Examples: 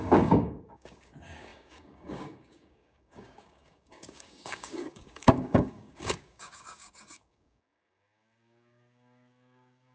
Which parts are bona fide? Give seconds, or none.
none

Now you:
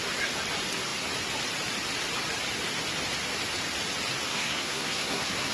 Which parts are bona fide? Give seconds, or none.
0.0-4.3

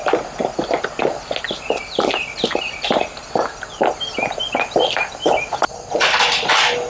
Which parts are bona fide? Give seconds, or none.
0.0-6.9

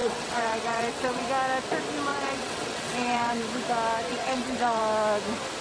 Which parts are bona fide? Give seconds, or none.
1.2-2.1; 3.3-4.1; 4.8-5.6

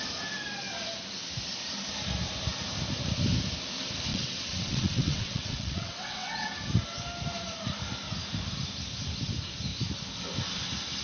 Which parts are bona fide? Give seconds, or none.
0.0-4.1; 6.5-11.0

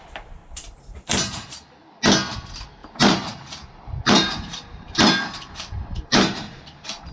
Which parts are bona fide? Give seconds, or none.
0.0-0.4; 1.5-2.8

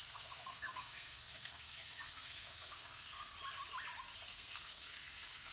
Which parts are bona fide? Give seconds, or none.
3.3-4.3